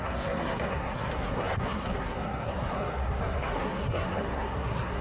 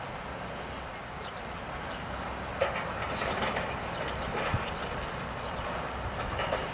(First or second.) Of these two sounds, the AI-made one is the first